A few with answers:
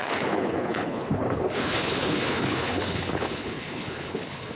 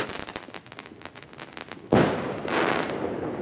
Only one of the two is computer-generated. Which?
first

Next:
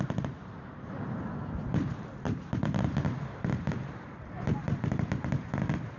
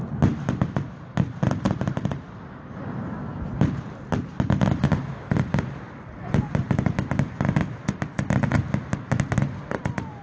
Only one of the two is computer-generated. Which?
first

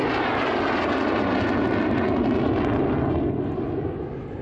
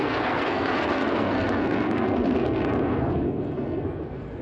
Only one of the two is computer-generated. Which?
second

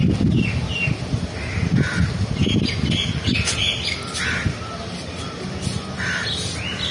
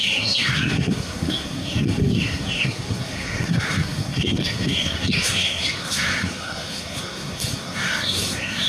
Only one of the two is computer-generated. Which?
second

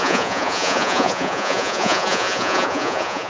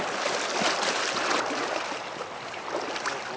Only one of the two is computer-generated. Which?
first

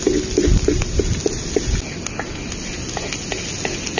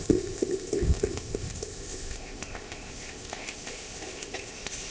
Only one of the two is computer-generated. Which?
second